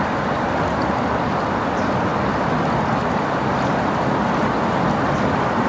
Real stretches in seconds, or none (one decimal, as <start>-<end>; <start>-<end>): 0.0-5.7